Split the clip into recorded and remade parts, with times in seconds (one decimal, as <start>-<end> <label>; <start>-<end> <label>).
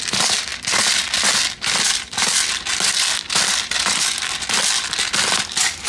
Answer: 0.0-5.9 recorded